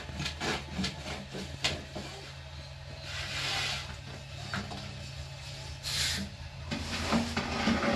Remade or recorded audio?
recorded